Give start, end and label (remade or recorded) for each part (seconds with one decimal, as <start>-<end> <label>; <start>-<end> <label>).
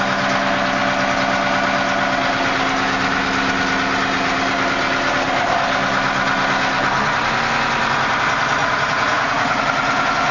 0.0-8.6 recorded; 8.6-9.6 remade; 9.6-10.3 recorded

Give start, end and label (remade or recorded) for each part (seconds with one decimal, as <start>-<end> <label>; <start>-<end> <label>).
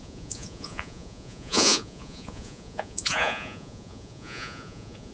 0.0-5.1 remade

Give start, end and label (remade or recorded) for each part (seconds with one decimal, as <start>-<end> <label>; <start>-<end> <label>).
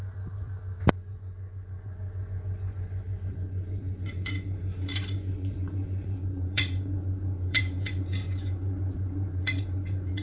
0.0-0.9 recorded; 0.9-10.2 remade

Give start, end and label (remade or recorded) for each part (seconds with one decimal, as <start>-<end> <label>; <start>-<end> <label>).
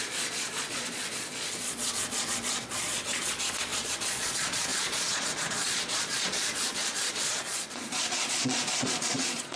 0.0-9.6 remade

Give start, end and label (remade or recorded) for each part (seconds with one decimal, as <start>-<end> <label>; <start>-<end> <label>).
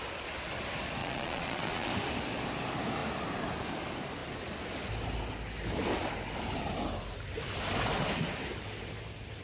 0.0-1.0 recorded; 1.0-1.9 remade; 1.9-9.4 recorded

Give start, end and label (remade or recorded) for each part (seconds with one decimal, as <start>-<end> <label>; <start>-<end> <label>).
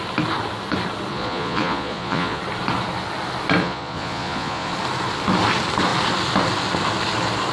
0.0-1.1 recorded; 1.1-2.4 remade; 2.4-3.6 recorded; 3.6-4.7 remade; 4.7-7.5 recorded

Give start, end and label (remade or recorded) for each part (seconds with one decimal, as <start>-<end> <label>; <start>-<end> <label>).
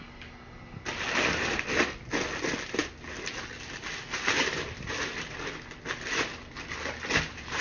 0.0-7.6 recorded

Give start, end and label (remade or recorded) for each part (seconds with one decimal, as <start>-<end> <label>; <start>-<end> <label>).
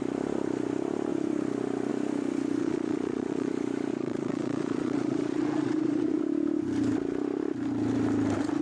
0.0-2.6 recorded; 2.6-3.5 remade; 3.5-3.9 recorded; 3.9-6.2 remade; 6.2-8.6 recorded